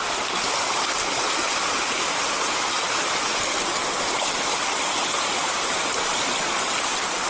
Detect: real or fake real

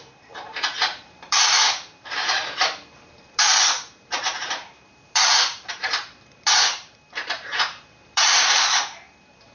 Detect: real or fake fake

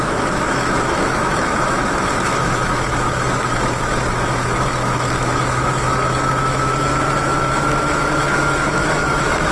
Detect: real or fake fake